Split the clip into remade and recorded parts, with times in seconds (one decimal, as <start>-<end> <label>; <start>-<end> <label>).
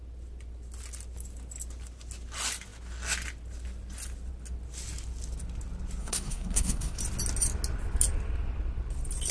0.0-6.0 recorded; 6.0-7.0 remade; 7.0-9.3 recorded